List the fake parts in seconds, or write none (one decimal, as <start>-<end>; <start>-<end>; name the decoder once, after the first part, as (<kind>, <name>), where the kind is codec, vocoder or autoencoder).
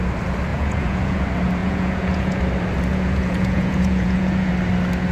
0.5-1.2 (vocoder, Vocos); 1.6-2.4; 2.9-4.5